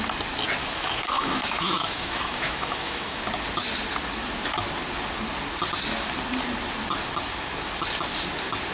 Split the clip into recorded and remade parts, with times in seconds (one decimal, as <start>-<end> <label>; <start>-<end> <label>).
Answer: 0.0-0.6 recorded; 0.6-3.2 remade; 3.2-8.7 recorded